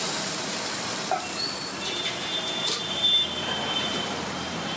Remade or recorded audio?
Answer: remade